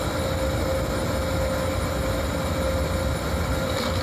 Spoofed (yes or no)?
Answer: no